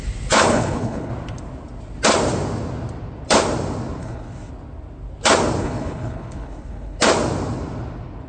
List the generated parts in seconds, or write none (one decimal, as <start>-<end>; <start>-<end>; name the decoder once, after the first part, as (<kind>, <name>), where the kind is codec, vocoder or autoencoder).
0.5-1.1 (codec, HILCodec); 4.0-4.5; 5.6-7.0